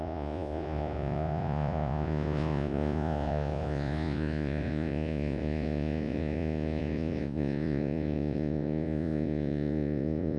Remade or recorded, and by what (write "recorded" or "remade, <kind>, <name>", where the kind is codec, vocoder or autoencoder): remade, vocoder, Vocos